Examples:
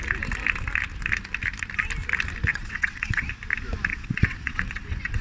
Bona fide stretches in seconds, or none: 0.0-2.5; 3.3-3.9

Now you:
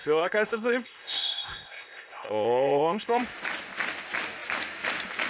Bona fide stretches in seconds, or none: 3.2-5.3

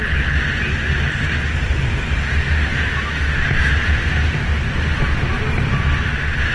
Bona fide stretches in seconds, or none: 0.0-2.7; 3.7-6.5

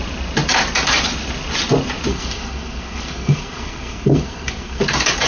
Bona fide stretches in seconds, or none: 0.0-2.1; 4.8-5.3

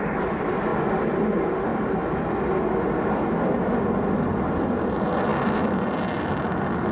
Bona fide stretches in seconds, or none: 0.0-6.9

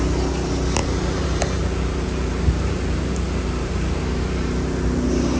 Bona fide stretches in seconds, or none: 0.0-0.8; 4.0-5.4

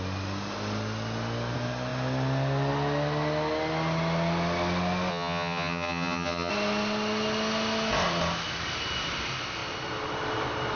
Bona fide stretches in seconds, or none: 0.0-5.1; 6.5-10.8

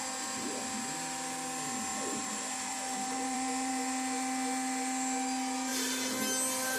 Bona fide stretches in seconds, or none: 0.0-1.9; 3.7-6.8